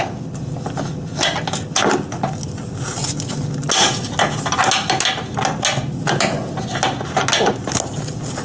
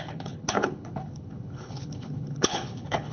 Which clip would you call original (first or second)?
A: first